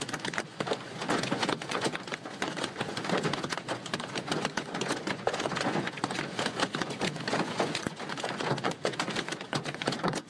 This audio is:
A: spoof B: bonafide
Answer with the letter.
A